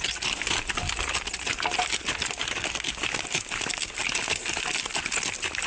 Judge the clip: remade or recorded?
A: recorded